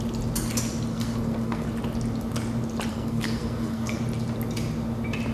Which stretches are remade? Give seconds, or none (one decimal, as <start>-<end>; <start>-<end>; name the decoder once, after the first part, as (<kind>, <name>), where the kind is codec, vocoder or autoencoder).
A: 0.9-1.7 (codec, SNAC); 2.9-4.0